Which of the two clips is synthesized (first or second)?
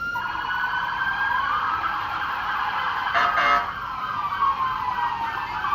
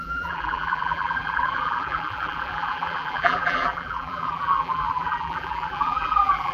second